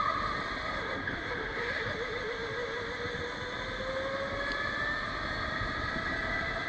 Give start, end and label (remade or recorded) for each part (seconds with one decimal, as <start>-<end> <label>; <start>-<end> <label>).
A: 0.0-6.7 recorded